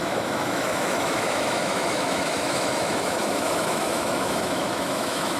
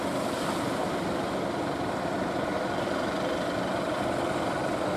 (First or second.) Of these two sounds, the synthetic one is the first